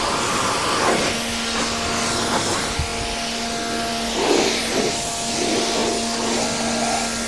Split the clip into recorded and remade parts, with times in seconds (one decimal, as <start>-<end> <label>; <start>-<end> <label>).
0.0-7.3 recorded